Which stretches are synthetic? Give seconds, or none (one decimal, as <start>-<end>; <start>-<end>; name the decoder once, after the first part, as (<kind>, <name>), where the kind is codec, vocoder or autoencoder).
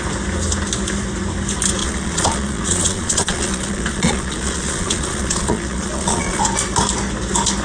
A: 1.8-6.4 (vocoder, Vocos)